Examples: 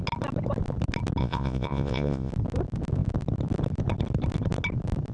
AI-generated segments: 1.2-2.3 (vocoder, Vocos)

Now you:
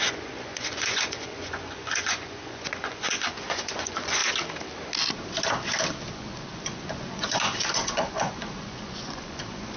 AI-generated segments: 0.0-4.2 (vocoder, Vocos); 6.1-9.8

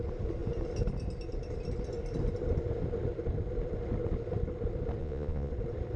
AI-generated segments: 5.0-5.5 (vocoder, Vocos)

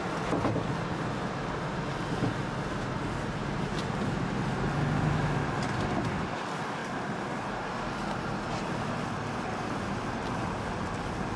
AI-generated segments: none

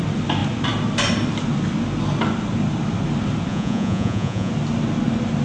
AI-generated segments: 3.5-4.5 (vocoder, Vocos)